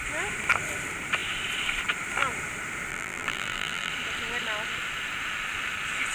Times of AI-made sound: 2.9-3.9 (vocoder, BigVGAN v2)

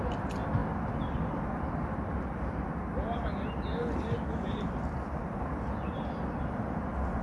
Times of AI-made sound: none

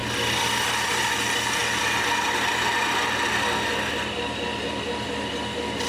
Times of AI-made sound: none

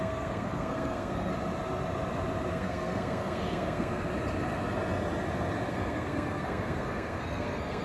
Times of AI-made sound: 0.0-1.3 (codec, SNAC); 2.5-4.1; 5.7-7.8

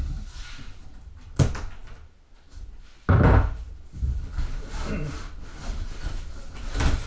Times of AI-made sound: none